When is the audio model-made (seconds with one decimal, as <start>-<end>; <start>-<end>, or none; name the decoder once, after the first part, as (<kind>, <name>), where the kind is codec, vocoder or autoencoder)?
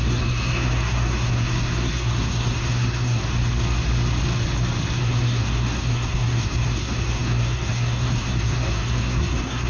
0.0-3.2 (codec, SNAC); 5.0-9.7